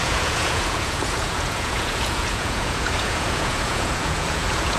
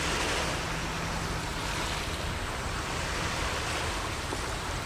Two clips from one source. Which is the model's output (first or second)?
first